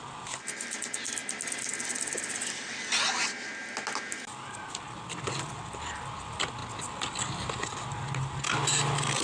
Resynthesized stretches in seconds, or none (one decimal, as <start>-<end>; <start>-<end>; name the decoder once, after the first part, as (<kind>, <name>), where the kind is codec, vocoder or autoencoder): none